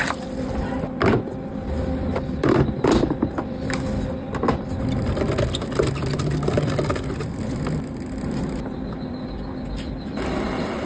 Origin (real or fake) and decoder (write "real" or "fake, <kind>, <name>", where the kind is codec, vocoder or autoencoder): real